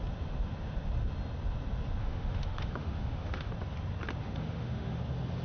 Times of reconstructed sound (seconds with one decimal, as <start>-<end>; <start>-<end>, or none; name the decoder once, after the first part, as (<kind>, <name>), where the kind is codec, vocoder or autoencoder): 2.0-3.5 (autoencoder, DAC-VAE); 4.2-5.0